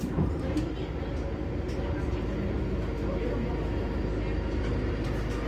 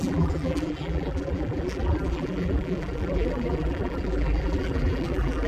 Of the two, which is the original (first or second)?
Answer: first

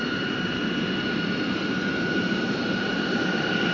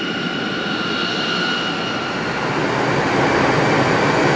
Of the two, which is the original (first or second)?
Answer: second